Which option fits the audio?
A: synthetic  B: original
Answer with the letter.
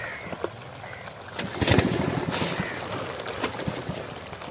B